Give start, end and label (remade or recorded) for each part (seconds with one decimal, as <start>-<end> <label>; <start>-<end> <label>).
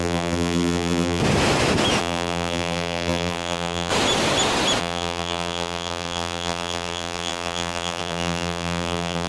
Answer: 0.0-1.2 remade; 1.2-2.0 recorded; 2.0-3.9 remade; 3.9-4.8 recorded; 4.8-9.3 remade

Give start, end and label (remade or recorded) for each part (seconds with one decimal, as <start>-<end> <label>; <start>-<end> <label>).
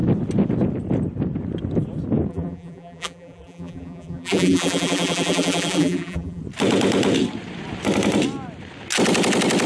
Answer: 0.0-2.3 recorded; 2.3-6.4 remade; 6.4-9.7 recorded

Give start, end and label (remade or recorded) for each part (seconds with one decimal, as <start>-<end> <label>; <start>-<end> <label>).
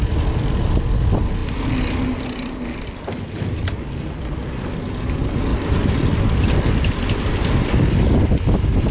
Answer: 0.0-5.5 recorded; 5.5-6.2 remade; 6.2-8.9 recorded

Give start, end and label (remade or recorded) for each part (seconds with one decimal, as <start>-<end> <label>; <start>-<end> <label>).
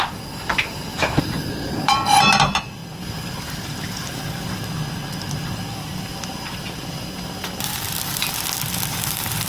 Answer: 0.0-0.9 recorded; 0.9-2.3 remade; 2.3-6.1 recorded; 6.1-8.2 remade; 8.2-9.5 recorded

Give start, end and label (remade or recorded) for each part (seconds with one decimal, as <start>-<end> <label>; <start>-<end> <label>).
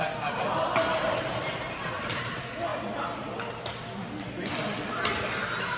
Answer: 0.0-0.9 recorded; 0.9-2.3 remade; 2.3-5.8 recorded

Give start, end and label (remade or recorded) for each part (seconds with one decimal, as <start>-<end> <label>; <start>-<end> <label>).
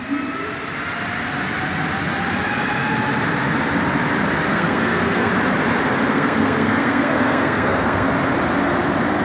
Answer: 0.0-4.5 recorded; 4.5-5.3 remade; 5.3-6.1 recorded; 6.1-8.1 remade; 8.1-9.2 recorded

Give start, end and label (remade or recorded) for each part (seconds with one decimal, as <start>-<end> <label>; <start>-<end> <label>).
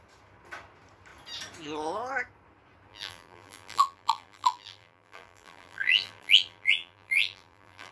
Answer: 0.0-2.9 recorded; 2.9-7.9 remade